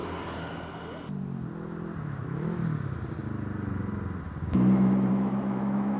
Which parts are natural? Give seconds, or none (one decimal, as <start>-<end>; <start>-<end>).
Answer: 0.0-2.0; 2.6-5.1